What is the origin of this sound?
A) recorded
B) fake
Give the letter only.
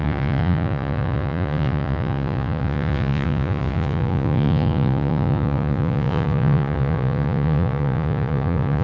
B